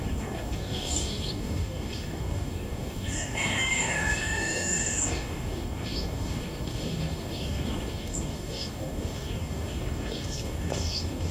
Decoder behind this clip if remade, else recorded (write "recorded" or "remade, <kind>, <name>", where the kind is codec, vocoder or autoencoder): remade, codec, DAC